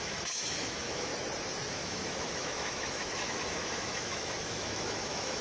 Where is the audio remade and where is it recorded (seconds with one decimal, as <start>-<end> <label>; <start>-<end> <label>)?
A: 0.0-1.1 remade; 1.1-1.7 recorded; 1.7-5.4 remade